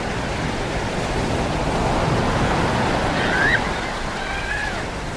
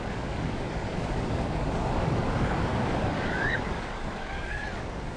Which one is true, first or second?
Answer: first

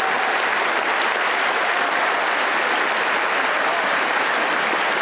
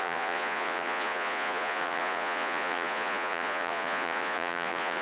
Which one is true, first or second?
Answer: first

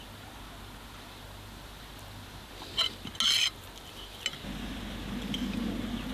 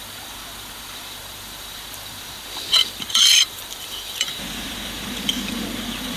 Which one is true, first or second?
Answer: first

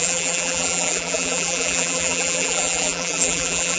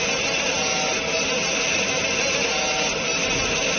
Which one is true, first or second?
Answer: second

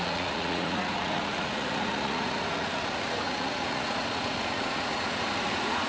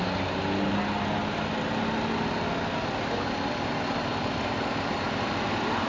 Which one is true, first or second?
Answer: second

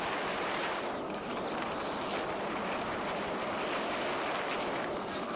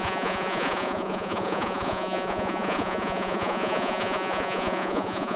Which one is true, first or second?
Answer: first